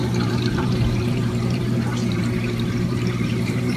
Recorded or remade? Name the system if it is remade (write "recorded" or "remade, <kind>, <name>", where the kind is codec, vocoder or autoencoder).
remade, vocoder, BigVGAN v2